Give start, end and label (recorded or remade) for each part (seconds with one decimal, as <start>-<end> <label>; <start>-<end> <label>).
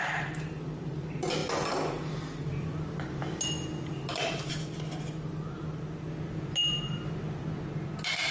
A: 0.0-8.3 recorded